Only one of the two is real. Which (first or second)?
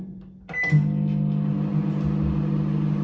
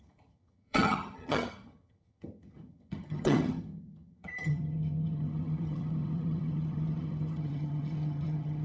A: first